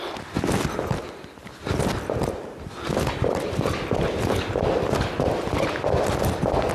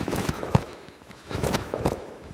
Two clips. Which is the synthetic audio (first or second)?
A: second